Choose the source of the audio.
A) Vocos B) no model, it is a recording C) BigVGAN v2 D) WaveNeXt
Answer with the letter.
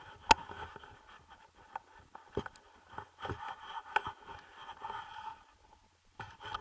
B